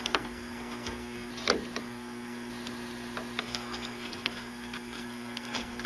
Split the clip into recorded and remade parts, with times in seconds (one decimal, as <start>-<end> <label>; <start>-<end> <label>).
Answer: 0.0-1.3 remade; 1.3-1.8 recorded; 1.8-2.5 remade; 2.5-3.4 recorded; 3.4-5.9 remade